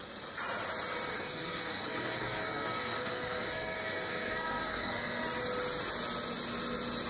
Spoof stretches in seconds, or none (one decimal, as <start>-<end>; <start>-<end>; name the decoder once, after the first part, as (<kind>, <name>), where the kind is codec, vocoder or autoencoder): 1.1-5.2 (codec, SNAC)